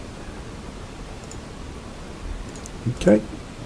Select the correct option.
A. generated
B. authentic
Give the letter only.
B